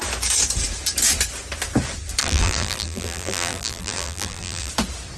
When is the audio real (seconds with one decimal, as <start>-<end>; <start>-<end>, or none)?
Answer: 0.0-2.2; 4.7-5.2